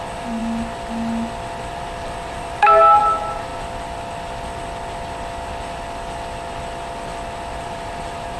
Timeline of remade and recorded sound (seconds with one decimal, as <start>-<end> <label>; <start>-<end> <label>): 0.0-0.4 remade; 0.4-1.7 recorded; 1.7-3.5 remade; 3.5-7.6 recorded; 7.6-8.4 remade